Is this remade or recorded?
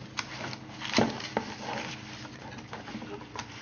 recorded